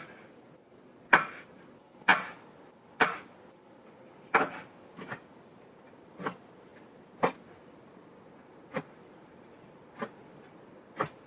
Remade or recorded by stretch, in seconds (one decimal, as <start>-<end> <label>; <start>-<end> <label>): 0.0-11.3 recorded